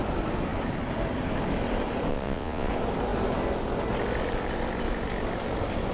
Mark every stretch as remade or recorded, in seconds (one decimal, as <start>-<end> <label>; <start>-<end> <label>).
0.0-2.1 recorded; 2.1-2.7 remade; 2.7-5.9 recorded